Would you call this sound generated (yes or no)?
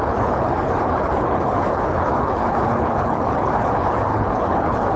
yes